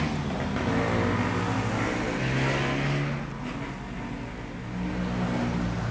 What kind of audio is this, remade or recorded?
recorded